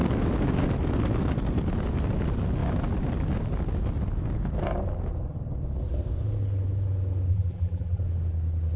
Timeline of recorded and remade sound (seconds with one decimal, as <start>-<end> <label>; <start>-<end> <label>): 0.0-7.3 recorded; 7.3-8.0 remade; 8.0-8.8 recorded